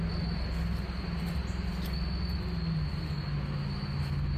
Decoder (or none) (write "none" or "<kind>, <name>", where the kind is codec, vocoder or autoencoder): none